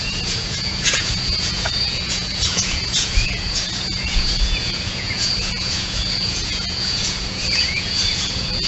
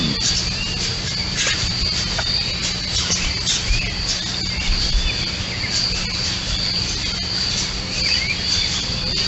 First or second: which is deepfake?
first